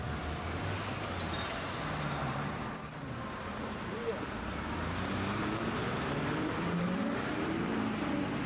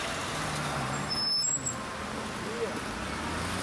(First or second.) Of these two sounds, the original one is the second